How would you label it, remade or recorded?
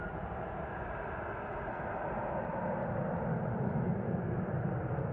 recorded